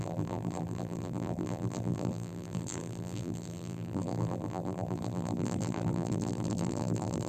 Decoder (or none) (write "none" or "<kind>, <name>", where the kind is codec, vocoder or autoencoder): vocoder, BigVGAN v2